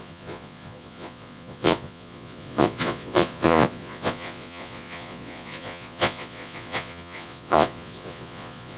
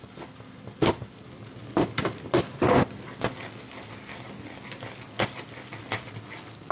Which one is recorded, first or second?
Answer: second